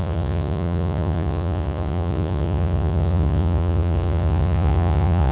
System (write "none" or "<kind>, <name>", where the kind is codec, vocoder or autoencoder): vocoder, Vocos